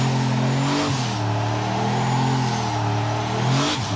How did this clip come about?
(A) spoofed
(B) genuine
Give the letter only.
B